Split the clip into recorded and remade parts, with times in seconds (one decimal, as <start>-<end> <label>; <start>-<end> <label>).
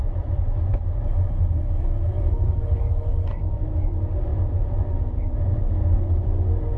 0.0-6.8 recorded